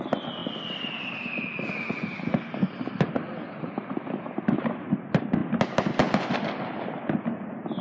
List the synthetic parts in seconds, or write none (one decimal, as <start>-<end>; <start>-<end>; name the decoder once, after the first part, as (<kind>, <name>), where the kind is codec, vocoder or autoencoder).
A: none